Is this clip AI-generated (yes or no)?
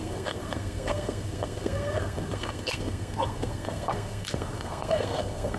yes